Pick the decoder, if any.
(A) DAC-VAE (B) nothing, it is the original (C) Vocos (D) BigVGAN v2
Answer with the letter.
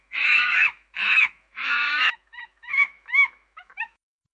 A